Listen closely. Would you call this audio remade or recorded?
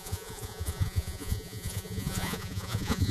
remade